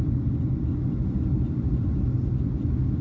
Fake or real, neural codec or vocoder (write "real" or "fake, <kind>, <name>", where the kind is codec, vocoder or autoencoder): real